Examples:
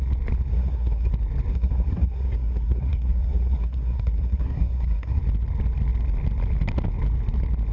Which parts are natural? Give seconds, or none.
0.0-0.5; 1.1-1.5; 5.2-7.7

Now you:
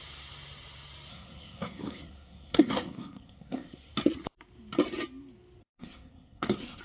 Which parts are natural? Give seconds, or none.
0.0-1.1; 3.9-5.6